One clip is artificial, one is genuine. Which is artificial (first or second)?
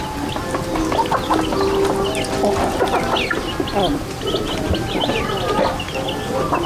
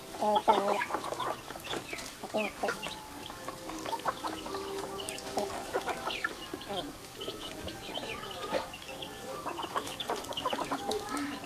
second